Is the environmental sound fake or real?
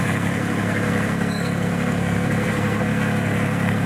fake